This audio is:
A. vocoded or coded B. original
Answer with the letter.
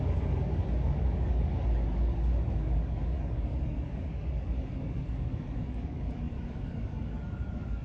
A